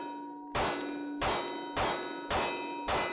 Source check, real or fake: real